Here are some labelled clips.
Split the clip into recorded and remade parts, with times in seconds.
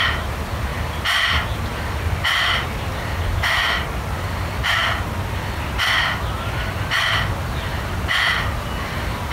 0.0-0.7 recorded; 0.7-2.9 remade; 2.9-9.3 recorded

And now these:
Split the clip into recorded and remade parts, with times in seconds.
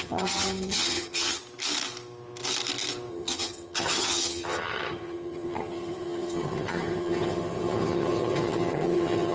0.0-1.4 remade; 1.4-3.1 recorded; 3.1-9.3 remade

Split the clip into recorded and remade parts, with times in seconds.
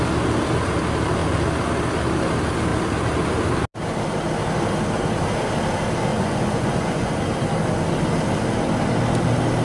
0.0-6.1 recorded; 6.1-7.1 remade; 7.1-9.6 recorded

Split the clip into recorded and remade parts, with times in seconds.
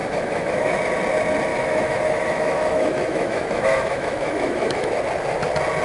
0.0-0.8 remade; 0.8-1.5 recorded; 1.5-5.0 remade; 5.0-5.8 recorded